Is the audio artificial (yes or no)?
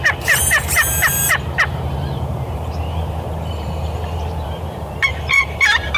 yes